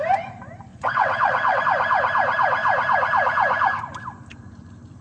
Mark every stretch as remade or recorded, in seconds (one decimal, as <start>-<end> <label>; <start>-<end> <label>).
0.0-0.7 recorded; 0.7-1.6 remade; 1.6-5.0 recorded

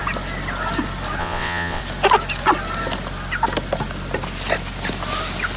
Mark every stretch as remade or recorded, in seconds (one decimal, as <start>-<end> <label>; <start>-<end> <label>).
0.0-1.2 recorded; 1.2-1.8 remade; 1.8-5.6 recorded

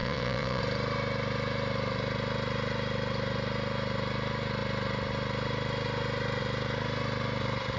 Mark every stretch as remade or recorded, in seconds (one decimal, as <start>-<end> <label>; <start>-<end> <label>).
0.0-0.6 remade; 0.6-7.8 recorded